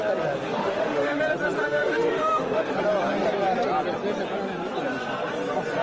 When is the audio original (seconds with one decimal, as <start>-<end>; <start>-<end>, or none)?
0.0-0.6; 1.2-1.6; 2.7-5.8